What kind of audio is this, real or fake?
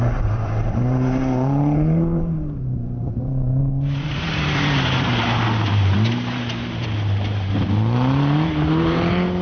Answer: fake